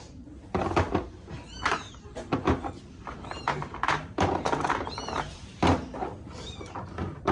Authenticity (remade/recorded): remade